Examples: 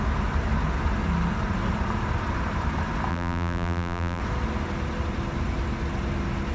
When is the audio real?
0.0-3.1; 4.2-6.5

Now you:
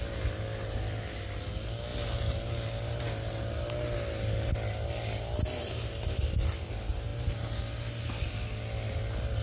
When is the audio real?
0.0-9.4

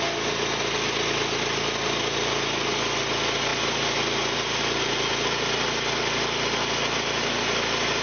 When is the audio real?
0.0-8.0

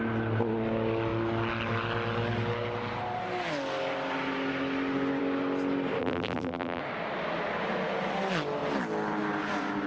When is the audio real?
0.0-6.0; 6.8-9.9

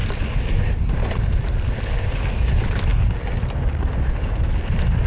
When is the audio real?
0.0-1.9; 2.9-4.4